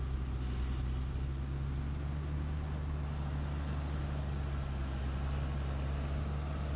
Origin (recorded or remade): recorded